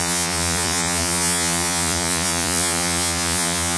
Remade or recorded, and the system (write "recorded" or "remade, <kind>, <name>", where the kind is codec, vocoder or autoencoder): remade, vocoder, Vocos